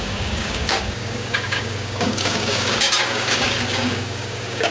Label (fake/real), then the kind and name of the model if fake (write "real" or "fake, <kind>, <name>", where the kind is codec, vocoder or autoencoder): fake, codec, DAC